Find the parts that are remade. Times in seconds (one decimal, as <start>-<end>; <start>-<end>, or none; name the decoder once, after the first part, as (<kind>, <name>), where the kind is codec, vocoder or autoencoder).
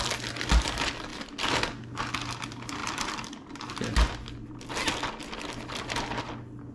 none